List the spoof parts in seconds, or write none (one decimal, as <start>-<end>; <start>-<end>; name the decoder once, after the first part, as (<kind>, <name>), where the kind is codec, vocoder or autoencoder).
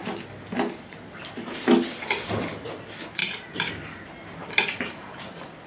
3.2-3.7 (vocoder, BigVGAN v2); 4.4-5.3